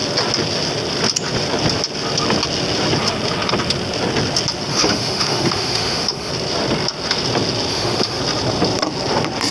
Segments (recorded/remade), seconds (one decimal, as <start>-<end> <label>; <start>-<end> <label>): 0.0-4.7 recorded; 4.7-6.3 remade; 6.3-7.7 recorded; 7.7-8.2 remade; 8.2-9.5 recorded